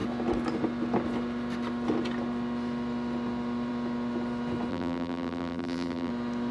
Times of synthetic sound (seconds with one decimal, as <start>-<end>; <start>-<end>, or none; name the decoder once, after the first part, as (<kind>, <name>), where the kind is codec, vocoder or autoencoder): 4.7-6.1 (vocoder, BigVGAN v2)